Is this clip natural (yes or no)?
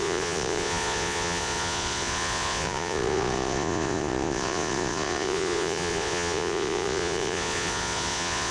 no